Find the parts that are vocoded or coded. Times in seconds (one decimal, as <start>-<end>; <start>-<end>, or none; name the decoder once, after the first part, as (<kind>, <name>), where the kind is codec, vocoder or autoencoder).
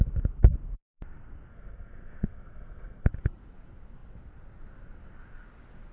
1.5-3.1 (codec, SNAC)